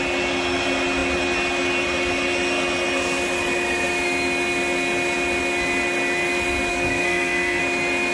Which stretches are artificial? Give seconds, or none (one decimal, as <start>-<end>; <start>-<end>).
6.7-7.6